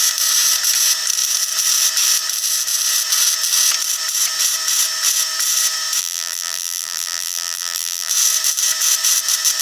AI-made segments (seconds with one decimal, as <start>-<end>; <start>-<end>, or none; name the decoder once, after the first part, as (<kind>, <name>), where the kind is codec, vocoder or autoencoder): 6.0-8.1 (vocoder, BigVGAN v2)